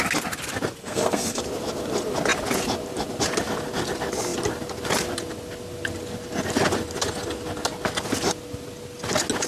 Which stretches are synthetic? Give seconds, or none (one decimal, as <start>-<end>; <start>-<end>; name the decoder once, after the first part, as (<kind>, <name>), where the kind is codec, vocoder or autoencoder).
0.8-1.4 (codec, SNAC)